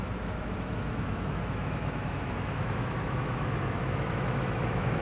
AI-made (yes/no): yes